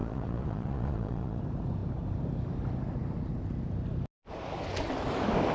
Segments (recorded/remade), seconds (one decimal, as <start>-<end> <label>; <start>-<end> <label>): 0.0-1.4 remade; 1.4-5.5 recorded